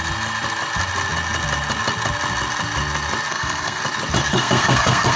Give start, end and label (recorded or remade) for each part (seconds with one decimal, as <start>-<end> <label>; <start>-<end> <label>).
0.0-3.3 recorded; 3.3-3.8 remade; 3.8-4.3 recorded; 4.3-5.2 remade